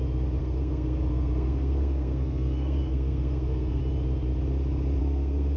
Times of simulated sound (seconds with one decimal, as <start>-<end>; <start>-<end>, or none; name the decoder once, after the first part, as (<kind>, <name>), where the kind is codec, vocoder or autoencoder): 0.4-3.8 (codec, SNAC); 5.0-5.6